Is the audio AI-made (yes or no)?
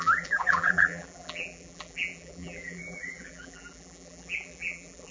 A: yes